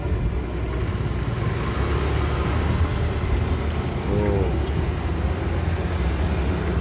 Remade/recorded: recorded